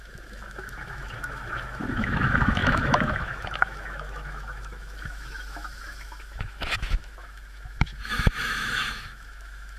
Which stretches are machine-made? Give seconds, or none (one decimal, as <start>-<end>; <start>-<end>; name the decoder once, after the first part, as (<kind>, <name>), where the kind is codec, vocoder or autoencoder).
0.0-9.8 (autoencoder, DAC-VAE)